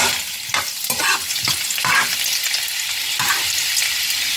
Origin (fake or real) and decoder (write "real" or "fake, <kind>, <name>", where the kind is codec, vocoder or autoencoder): real